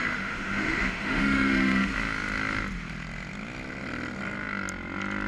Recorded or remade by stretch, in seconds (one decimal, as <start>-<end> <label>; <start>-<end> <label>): 0.0-1.9 remade; 1.9-5.3 recorded